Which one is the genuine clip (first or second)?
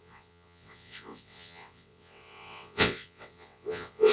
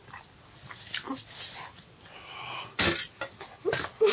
second